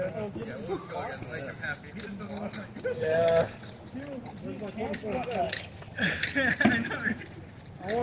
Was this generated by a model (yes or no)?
no